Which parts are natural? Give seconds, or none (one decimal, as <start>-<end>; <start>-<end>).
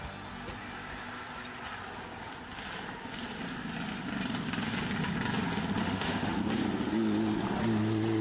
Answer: 0.0-5.8; 6.4-8.2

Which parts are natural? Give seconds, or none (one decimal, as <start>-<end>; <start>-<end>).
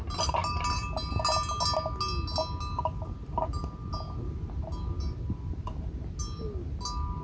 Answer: 0.0-7.2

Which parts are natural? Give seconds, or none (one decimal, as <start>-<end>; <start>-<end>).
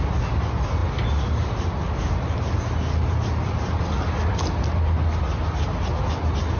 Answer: 0.0-6.6